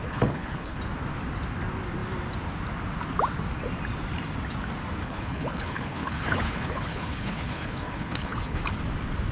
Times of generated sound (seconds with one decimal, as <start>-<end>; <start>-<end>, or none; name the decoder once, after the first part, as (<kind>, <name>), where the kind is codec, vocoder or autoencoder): 0.0-0.8 (codec, HILCodec); 5.0-8.6